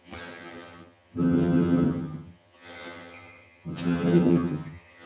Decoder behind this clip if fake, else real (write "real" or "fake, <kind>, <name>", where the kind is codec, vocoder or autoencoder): fake, vocoder, HiFi-GAN